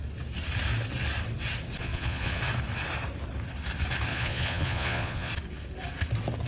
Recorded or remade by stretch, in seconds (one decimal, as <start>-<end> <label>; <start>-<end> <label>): 0.0-1.8 recorded; 1.8-2.4 remade; 2.4-4.1 recorded; 4.1-5.3 remade; 5.3-6.5 recorded